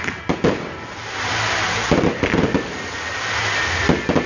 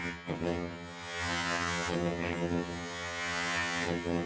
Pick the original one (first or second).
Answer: first